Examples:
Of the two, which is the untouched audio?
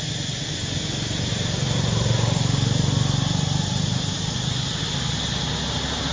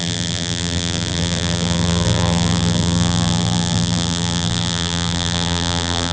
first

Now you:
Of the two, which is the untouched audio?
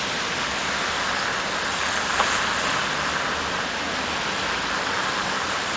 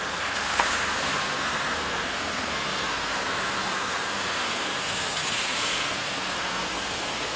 first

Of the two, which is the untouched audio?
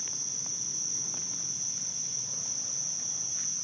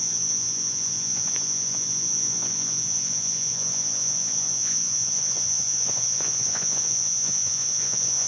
first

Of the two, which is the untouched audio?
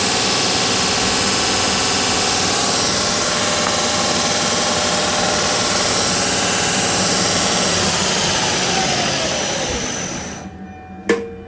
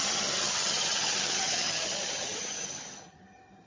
first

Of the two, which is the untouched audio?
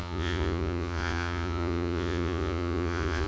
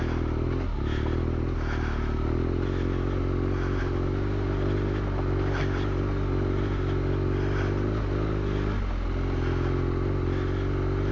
second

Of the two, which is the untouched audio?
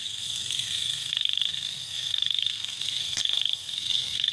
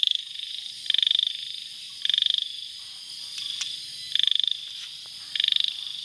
second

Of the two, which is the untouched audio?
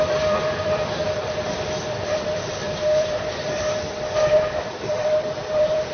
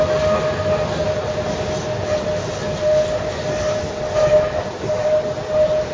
second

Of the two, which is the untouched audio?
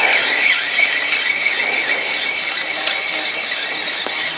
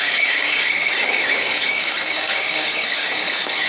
first